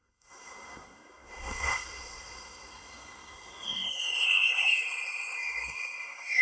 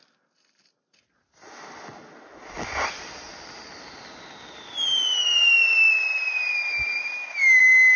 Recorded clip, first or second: second